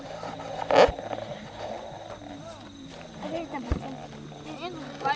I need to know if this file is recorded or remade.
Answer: recorded